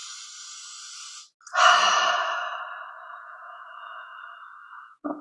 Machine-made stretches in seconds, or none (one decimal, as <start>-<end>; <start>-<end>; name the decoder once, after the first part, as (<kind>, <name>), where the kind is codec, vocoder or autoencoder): 3.1-4.1 (vocoder, Vocos); 4.7-5.2